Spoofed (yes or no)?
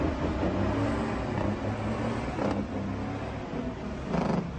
no